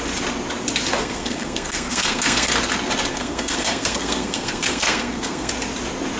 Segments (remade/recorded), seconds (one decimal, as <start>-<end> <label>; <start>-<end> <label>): 0.0-1.0 recorded; 1.0-2.5 remade; 2.5-3.1 recorded; 3.1-5.5 remade; 5.5-6.2 recorded